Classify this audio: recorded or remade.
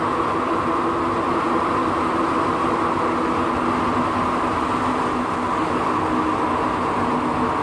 recorded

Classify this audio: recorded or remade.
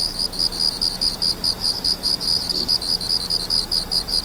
recorded